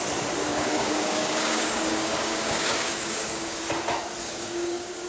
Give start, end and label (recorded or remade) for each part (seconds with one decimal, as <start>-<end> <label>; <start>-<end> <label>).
0.0-0.5 recorded; 0.5-3.6 remade; 3.6-4.2 recorded; 4.2-5.1 remade